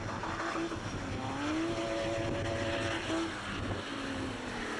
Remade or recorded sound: recorded